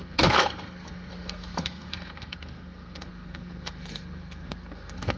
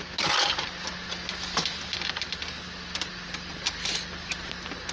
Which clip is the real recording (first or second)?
second